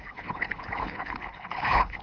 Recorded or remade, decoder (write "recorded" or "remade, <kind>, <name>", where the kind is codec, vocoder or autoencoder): remade, codec, HILCodec